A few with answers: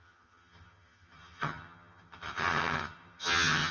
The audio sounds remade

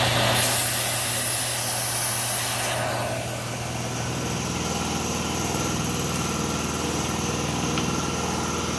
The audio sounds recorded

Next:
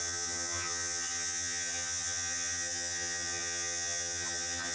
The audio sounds remade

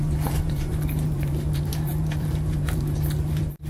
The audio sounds remade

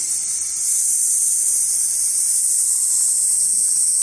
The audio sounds recorded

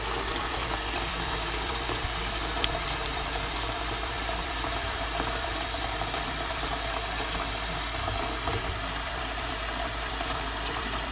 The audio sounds remade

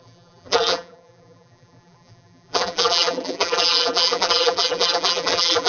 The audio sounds remade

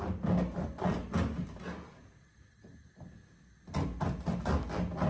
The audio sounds recorded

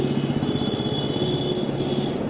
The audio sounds recorded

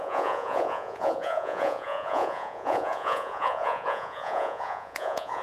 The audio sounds remade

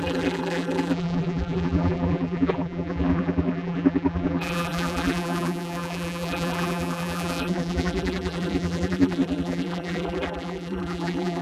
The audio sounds remade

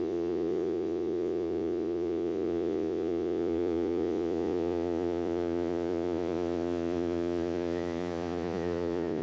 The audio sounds remade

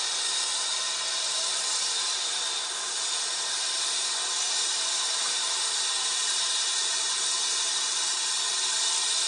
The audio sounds recorded